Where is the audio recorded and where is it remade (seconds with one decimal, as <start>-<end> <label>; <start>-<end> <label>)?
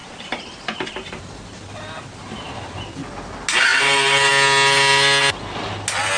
0.0-2.8 remade; 2.8-3.7 recorded; 3.7-4.3 remade; 4.3-6.2 recorded